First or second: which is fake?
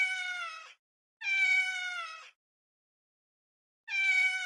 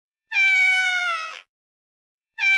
second